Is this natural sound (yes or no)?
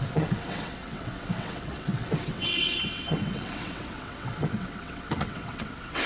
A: no